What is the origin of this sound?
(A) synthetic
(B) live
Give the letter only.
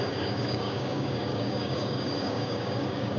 A